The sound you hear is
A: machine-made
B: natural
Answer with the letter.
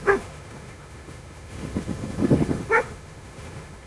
A